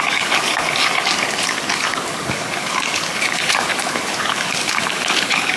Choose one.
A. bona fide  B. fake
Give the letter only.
B